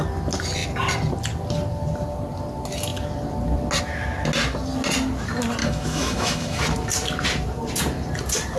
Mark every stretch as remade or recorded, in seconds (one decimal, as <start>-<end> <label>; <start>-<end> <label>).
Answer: 0.0-5.6 recorded; 5.6-6.6 remade; 6.6-8.6 recorded